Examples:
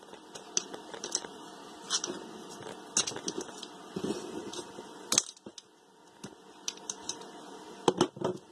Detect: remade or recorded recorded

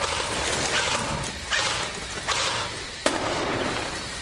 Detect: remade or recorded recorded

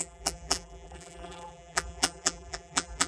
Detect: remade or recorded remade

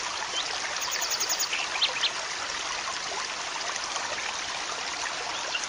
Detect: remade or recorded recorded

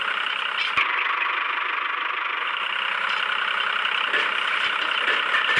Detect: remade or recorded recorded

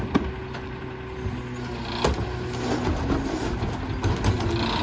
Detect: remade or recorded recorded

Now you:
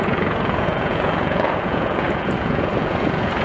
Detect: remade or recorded remade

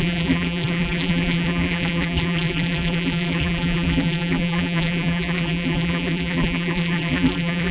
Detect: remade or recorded remade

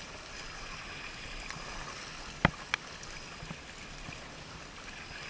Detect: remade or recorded recorded